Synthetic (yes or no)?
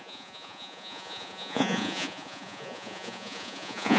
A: yes